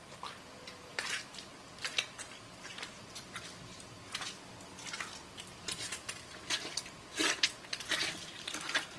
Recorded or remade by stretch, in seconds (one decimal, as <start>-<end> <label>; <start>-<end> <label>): 0.0-9.0 recorded